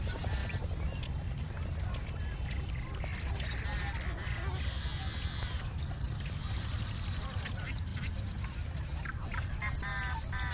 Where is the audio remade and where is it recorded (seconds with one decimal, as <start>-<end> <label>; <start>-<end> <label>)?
0.0-10.5 recorded